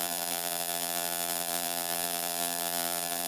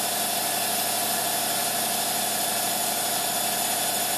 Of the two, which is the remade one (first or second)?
first